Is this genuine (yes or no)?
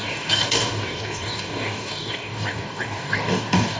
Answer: no